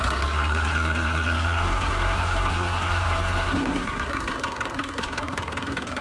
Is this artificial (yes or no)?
yes